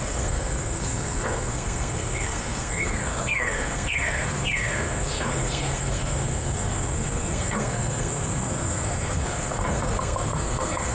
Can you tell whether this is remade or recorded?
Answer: remade